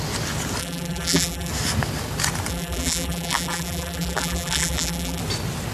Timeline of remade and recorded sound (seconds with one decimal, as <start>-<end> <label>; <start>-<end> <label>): 0.0-0.6 recorded; 0.6-1.5 remade; 1.5-2.5 recorded; 2.5-5.2 remade; 5.2-5.7 recorded